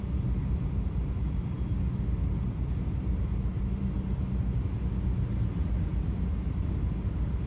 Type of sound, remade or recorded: recorded